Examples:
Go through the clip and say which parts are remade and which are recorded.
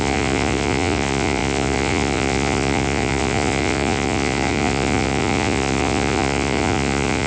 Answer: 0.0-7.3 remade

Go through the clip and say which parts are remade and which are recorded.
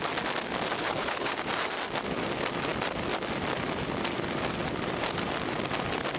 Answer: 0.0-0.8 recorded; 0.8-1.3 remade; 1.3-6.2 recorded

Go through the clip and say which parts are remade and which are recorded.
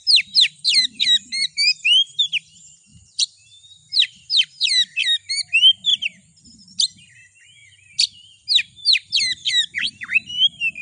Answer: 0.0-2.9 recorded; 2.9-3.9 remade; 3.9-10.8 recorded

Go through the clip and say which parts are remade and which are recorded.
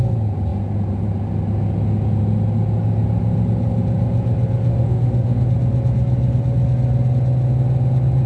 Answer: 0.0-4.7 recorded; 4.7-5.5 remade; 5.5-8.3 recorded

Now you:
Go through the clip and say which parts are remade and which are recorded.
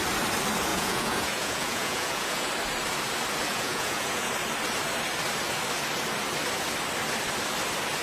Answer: 0.0-0.7 recorded; 0.7-2.5 remade; 2.5-3.5 recorded; 3.5-4.3 remade; 4.3-8.0 recorded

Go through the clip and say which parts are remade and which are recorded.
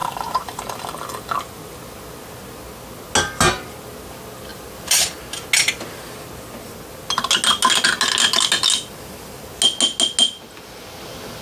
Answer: 0.0-0.6 remade; 0.6-4.5 recorded; 4.5-5.2 remade; 5.2-11.4 recorded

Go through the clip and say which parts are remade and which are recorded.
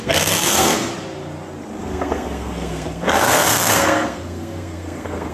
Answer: 0.0-0.9 remade; 0.9-1.8 recorded; 1.8-5.3 remade